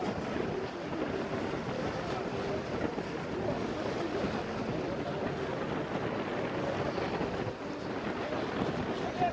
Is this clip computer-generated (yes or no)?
no